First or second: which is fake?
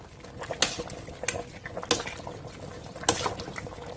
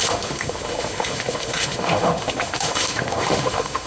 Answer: second